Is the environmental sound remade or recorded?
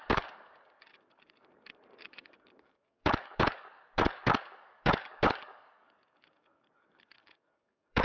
remade